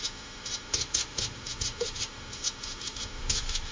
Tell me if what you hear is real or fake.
fake